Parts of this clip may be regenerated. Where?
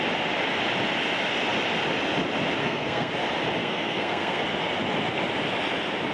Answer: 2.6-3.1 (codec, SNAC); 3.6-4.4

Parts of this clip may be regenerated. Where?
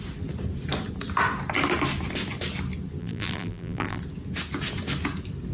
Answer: 3.0-4.0 (vocoder, BigVGAN v2)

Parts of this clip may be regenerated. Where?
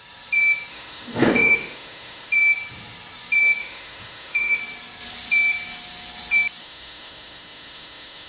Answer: 0.7-2.3 (autoencoder, DAC-VAE); 3.6-4.6; 6.6-8.3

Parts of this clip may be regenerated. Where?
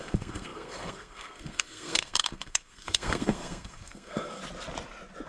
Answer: 0.0-4.4 (codec, SNAC)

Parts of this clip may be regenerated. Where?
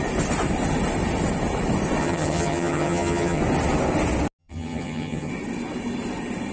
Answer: 2.0-3.4 (vocoder, HiFi-GAN); 4.4-5.3